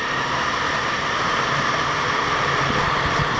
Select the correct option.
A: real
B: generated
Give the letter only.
A